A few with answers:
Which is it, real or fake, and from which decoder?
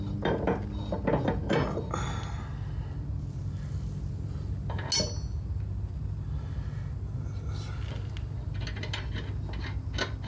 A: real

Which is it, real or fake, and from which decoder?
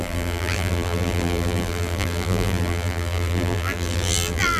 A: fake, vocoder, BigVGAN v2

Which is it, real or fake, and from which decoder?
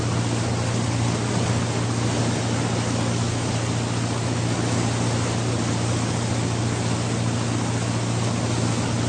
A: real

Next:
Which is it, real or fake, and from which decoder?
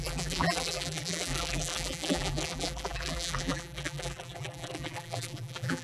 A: fake, vocoder, BigVGAN v2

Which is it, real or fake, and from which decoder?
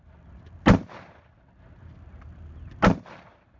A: real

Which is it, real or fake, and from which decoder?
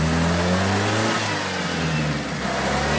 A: real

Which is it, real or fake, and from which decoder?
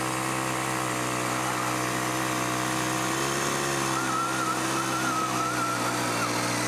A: real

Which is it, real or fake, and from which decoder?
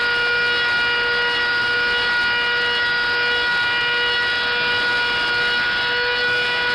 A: real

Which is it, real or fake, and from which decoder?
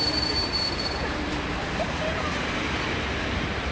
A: fake, vocoder, BigVGAN v2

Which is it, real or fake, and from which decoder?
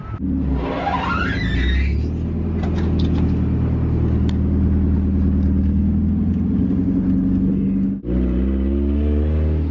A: real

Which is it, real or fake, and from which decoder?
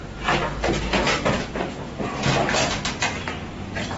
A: real